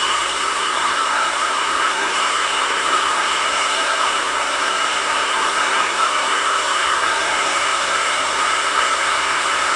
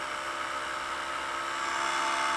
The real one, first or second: second